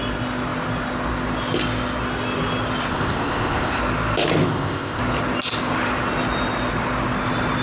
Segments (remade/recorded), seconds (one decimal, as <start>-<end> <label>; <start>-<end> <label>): 0.0-2.9 recorded; 2.9-3.8 remade; 3.8-4.4 recorded; 4.4-5.0 remade; 5.0-7.6 recorded